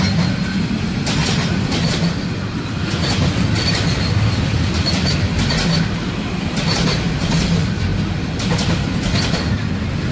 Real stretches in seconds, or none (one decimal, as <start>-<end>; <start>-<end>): 0.0-10.1